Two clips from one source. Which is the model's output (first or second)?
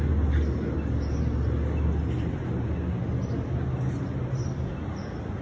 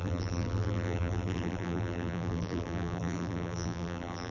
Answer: second